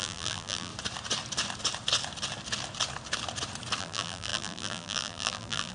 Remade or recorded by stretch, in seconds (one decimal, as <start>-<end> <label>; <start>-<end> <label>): 0.0-0.7 remade; 0.7-3.8 recorded; 3.8-5.7 remade